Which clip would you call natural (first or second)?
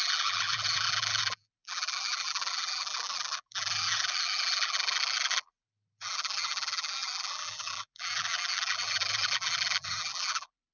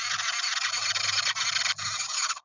second